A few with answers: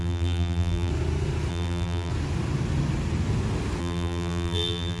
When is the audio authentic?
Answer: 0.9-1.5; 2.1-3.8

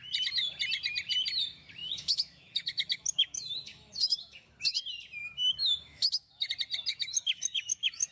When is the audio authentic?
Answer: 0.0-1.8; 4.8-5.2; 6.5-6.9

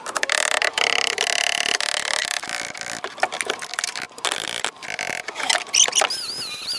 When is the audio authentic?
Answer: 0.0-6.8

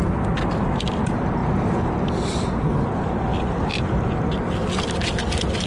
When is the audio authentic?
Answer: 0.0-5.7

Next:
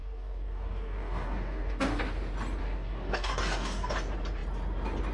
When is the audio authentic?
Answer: 2.0-2.6; 3.9-5.1

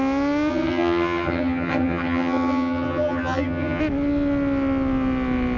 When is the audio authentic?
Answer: 0.0-0.5; 3.8-5.6